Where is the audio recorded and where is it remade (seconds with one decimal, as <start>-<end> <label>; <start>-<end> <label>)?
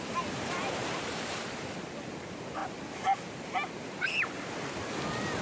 0.0-0.8 recorded; 0.8-1.7 remade; 1.7-5.4 recorded